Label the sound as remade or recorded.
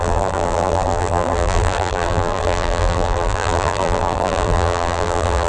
remade